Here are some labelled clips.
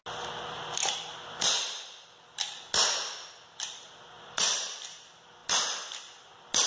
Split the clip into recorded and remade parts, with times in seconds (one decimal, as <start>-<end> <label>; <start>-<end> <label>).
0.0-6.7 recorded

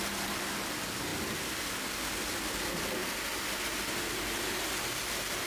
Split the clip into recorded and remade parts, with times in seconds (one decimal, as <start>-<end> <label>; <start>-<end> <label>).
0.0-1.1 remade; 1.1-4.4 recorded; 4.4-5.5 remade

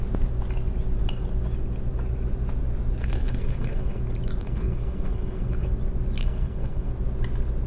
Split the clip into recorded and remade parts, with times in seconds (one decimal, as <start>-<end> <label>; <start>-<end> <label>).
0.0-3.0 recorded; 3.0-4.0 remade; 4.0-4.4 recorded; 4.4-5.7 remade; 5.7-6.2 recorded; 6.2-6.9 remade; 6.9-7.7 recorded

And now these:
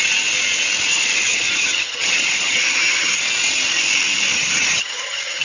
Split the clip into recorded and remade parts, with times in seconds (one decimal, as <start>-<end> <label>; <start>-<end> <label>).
0.0-0.9 recorded; 0.9-3.1 remade; 3.1-4.3 recorded; 4.3-5.4 remade

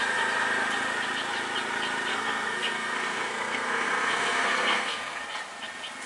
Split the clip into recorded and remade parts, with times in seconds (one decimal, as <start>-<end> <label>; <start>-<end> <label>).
0.0-2.1 recorded; 2.1-5.2 remade; 5.2-6.1 recorded

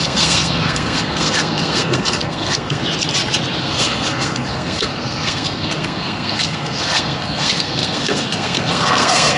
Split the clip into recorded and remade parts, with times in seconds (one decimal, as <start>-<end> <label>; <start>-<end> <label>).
0.0-2.8 remade; 2.8-3.6 recorded; 3.6-9.4 remade